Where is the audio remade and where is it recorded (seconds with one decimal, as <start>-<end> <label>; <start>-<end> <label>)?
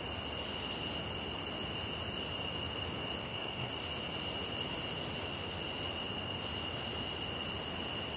0.0-3.2 recorded; 3.2-3.7 remade; 3.7-8.2 recorded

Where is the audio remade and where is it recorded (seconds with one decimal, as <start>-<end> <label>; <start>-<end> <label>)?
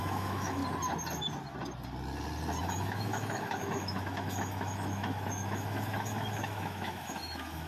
0.0-0.6 remade; 0.6-2.6 recorded; 2.6-7.7 remade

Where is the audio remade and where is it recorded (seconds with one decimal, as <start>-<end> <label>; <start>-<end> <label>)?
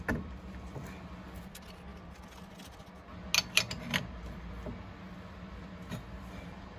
0.0-6.8 recorded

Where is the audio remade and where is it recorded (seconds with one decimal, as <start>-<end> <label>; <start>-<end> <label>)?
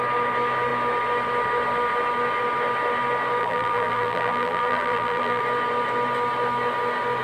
0.0-3.4 recorded; 3.4-5.4 remade; 5.4-7.2 recorded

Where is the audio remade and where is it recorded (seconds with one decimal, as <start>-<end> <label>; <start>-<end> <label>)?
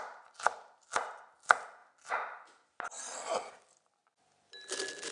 0.0-5.1 recorded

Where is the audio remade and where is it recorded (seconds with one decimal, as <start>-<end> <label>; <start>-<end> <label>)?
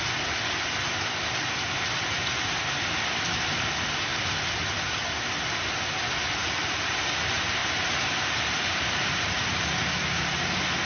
0.0-6.4 recorded; 6.4-6.9 remade; 6.9-7.6 recorded; 7.6-9.6 remade; 9.6-10.9 recorded